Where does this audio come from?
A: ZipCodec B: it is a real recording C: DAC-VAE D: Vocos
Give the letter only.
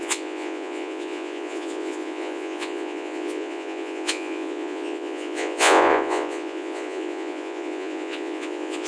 D